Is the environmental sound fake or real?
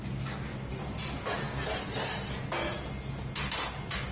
real